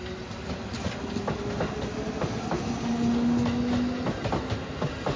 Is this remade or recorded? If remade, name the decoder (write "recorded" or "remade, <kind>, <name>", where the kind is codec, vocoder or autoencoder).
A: recorded